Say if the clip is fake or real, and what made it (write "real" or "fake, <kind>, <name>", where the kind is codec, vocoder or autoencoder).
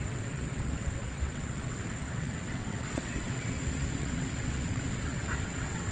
fake, vocoder, WaveNeXt